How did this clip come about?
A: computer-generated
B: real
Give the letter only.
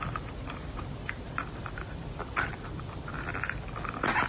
A